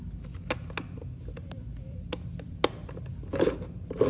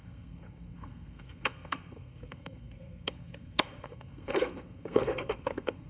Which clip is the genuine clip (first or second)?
first